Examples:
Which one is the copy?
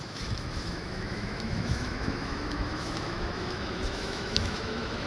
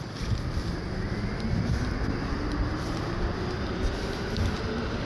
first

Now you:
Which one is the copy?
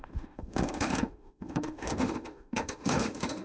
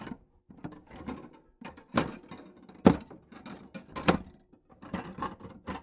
first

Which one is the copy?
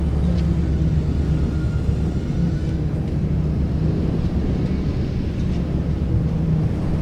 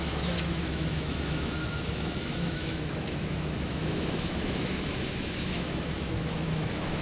second